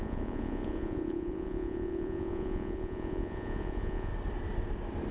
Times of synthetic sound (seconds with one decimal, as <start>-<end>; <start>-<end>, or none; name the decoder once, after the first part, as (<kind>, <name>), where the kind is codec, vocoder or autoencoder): 0.0-4.1 (vocoder, Vocos)